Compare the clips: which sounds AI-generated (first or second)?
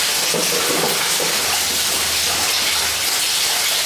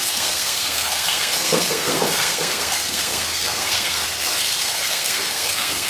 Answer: second